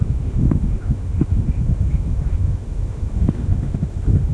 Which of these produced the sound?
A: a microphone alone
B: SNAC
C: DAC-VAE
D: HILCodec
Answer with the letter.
C